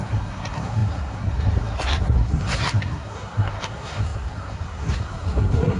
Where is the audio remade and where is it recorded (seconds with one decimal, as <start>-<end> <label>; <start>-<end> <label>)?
0.0-5.8 remade